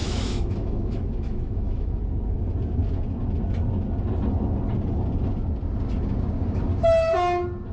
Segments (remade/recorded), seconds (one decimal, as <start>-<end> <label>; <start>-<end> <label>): 0.0-2.0 remade; 2.0-7.7 recorded